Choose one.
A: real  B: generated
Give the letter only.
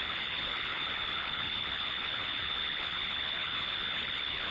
B